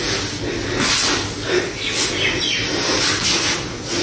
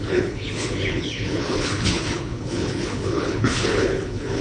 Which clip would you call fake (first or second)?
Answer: second